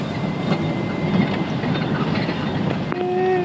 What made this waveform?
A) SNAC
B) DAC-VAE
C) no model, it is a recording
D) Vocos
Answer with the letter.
C